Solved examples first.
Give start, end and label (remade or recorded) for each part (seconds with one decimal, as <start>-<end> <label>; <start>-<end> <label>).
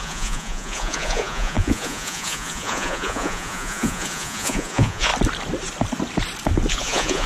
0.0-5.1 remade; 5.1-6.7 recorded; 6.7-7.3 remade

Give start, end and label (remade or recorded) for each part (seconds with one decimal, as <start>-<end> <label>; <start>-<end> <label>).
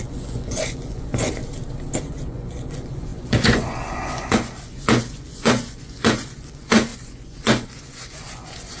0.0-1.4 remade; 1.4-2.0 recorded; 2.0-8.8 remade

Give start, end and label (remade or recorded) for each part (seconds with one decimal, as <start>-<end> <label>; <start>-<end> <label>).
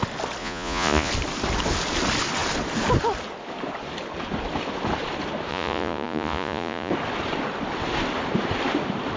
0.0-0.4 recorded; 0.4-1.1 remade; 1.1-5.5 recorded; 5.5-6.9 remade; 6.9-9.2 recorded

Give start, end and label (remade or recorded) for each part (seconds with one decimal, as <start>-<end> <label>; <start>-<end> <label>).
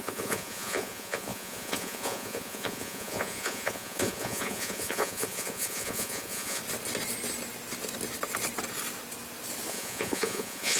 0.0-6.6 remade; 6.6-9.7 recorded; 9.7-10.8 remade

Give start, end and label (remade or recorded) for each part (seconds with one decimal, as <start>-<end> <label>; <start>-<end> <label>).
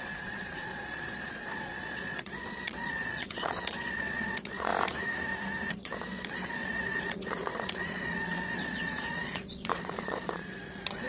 0.0-4.7 remade; 4.7-5.7 recorded; 5.7-11.1 remade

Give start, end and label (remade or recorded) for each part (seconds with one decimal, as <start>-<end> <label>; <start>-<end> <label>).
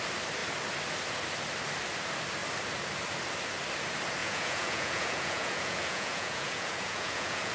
0.0-4.2 recorded; 4.2-7.5 remade